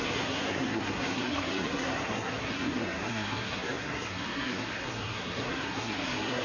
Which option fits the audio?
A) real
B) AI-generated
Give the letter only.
B